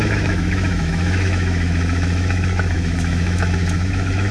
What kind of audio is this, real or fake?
fake